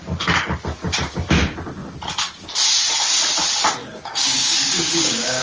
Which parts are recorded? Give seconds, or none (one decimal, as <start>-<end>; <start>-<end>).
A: 0.0-3.8